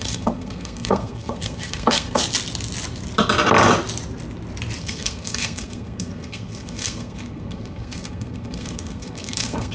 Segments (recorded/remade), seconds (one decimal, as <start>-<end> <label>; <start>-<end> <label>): 0.0-2.2 remade; 2.2-4.8 recorded; 4.8-9.7 remade